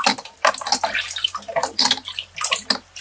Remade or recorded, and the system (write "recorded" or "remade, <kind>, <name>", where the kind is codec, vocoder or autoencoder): recorded